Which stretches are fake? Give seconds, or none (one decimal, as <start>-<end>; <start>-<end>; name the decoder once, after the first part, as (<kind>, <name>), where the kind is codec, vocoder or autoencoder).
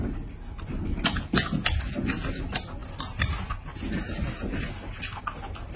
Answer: none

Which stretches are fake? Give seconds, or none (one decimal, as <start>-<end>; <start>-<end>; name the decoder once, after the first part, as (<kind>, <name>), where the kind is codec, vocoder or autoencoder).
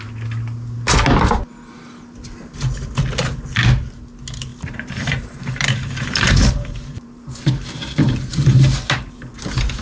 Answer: 4.5-9.4 (vocoder, BigVGAN v2)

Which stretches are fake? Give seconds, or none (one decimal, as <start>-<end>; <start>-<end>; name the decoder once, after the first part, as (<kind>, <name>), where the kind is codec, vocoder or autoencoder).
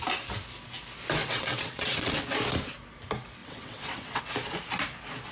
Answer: 1.2-2.2 (vocoder, WaveNeXt); 3.4-4.2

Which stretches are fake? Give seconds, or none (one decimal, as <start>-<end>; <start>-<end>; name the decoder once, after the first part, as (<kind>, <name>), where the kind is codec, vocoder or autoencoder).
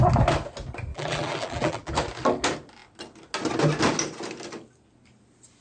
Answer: 0.9-1.9 (vocoder, BigVGAN v2)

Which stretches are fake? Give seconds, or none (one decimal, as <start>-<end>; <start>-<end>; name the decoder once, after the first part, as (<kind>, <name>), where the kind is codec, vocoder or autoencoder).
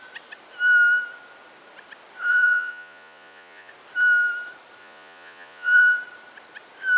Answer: 2.3-3.7 (vocoder, Vocos); 4.8-5.8